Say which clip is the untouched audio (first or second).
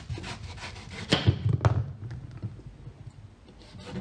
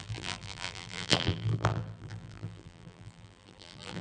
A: first